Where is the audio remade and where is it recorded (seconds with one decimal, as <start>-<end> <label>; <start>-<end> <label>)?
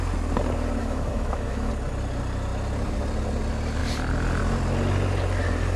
0.0-0.8 recorded; 0.8-1.7 remade; 1.7-5.8 recorded